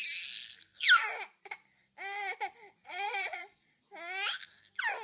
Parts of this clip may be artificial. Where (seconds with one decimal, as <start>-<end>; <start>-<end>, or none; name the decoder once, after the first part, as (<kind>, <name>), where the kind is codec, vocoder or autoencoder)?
2.8-3.8 (vocoder, Vocos)